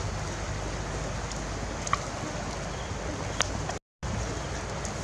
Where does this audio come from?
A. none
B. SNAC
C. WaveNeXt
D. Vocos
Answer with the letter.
A